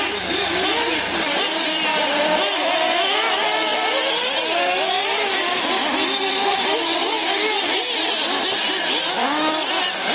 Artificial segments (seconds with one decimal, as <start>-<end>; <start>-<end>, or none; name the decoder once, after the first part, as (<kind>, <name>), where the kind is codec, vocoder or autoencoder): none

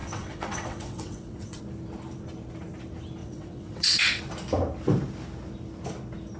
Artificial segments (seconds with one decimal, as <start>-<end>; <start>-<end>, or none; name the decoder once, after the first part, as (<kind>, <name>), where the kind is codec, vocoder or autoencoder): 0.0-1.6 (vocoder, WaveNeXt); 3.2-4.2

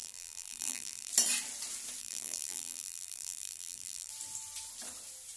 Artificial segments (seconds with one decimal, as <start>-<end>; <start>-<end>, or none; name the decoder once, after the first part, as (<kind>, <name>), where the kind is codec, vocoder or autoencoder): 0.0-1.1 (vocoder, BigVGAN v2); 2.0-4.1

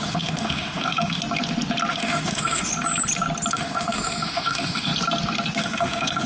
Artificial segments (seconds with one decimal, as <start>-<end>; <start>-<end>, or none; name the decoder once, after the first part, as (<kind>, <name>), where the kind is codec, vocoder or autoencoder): 0.0-1.2 (autoencoder, DAC-VAE); 1.9-2.7; 3.5-4.9; 5.6-6.3

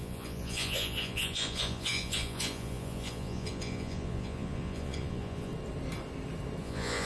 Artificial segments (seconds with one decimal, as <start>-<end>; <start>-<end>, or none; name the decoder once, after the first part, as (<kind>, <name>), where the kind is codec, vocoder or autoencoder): 0.0-5.5 (vocoder, Vocos); 6.6-7.1

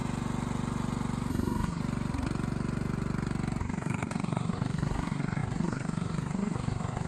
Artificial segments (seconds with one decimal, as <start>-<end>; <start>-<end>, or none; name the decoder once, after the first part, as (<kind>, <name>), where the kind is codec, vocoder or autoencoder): 1.3-1.8 (codec, SNAC); 3.6-7.1